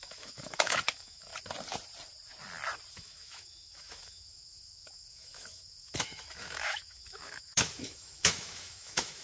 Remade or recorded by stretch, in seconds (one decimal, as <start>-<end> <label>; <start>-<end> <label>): 0.0-1.3 remade; 1.3-2.9 recorded; 2.9-9.2 remade